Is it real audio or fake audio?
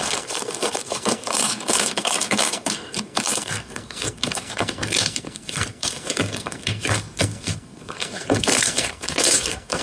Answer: fake